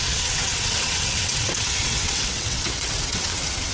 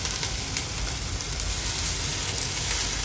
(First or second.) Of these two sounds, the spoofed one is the first